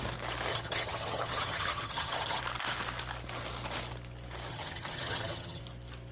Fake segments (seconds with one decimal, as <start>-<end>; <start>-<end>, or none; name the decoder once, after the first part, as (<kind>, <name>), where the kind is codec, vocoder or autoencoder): 0.5-2.4 (vocoder, HiFi-GAN); 4.5-5.6

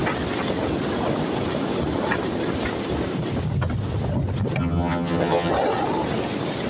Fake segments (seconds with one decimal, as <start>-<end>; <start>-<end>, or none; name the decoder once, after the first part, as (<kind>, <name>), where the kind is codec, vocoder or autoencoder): 4.6-5.5 (vocoder, HiFi-GAN)

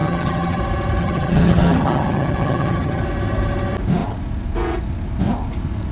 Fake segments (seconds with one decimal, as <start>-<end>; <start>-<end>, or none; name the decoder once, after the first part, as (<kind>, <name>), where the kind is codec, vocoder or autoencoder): 0.0-0.6 (vocoder, HiFi-GAN); 1.0-3.0

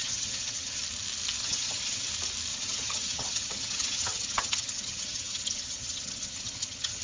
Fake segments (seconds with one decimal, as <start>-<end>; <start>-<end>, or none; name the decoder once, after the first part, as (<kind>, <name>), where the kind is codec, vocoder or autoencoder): 0.0-0.8 (vocoder, HiFi-GAN); 1.4-2.1; 2.5-7.0

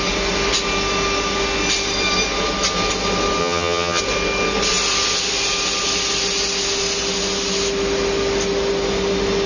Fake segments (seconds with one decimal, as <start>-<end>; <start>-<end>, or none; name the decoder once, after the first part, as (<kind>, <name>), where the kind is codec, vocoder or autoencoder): 3.4-4.0 (vocoder, HiFi-GAN)

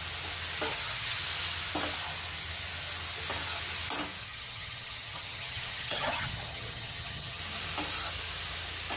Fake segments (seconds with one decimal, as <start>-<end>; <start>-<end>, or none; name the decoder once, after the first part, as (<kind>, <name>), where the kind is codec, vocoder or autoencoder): 0.7-1.2 (vocoder, HiFi-GAN); 4.2-7.4